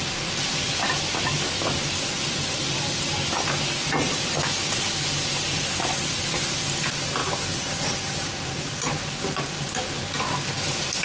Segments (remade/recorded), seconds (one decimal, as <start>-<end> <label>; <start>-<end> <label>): 0.0-7.2 recorded; 7.2-8.8 remade; 8.8-11.0 recorded